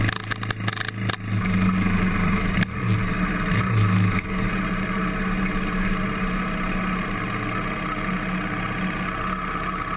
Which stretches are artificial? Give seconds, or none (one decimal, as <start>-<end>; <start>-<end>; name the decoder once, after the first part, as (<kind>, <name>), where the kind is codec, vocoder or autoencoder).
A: none